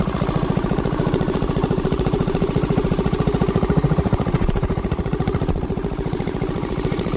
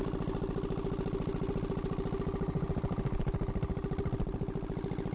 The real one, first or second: second